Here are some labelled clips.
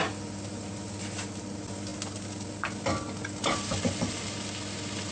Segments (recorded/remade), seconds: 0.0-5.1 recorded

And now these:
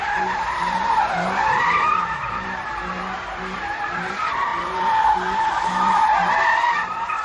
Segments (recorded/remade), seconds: 0.0-7.2 remade

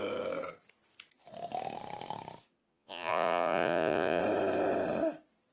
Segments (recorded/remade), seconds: 0.0-2.7 recorded; 2.7-4.2 remade; 4.2-5.5 recorded

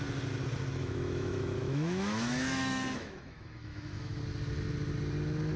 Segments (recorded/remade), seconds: 0.0-0.8 recorded; 0.8-4.2 remade; 4.2-5.6 recorded

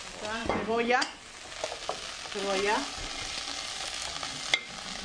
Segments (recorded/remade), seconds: 0.0-0.4 recorded; 0.4-1.2 remade; 1.2-5.0 recorded

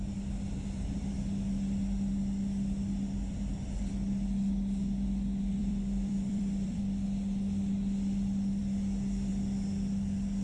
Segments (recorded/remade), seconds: 0.0-5.6 recorded; 5.6-6.8 remade; 6.8-10.4 recorded

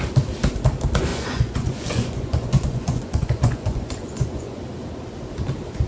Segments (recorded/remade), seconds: 0.0-1.1 recorded; 1.1-4.6 remade; 4.6-5.9 recorded

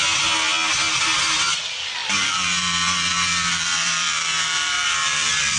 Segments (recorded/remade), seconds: 0.0-2.0 recorded; 2.0-5.6 remade